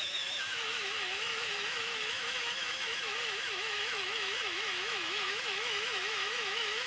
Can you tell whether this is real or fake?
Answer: fake